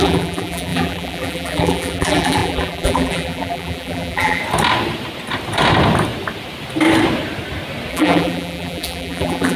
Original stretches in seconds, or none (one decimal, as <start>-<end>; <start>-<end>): 4.4-7.9